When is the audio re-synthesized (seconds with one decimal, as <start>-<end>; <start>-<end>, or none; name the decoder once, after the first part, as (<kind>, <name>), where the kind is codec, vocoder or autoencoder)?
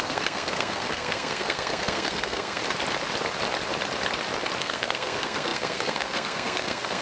0.0-2.6 (codec, SNAC); 4.6-7.0